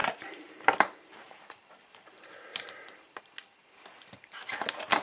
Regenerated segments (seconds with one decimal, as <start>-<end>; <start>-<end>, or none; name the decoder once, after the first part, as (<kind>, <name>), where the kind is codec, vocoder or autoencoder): 0.0-1.7 (vocoder, BigVGAN v2); 2.5-3.2